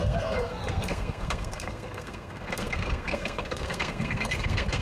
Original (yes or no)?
no